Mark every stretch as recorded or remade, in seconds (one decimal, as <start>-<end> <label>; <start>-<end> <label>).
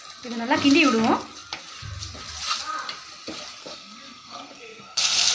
0.0-3.6 recorded; 3.6-5.3 remade